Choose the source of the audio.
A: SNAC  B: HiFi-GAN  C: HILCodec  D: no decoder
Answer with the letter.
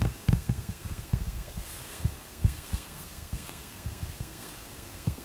A